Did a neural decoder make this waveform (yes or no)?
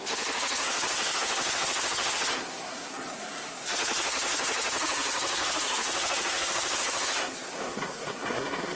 yes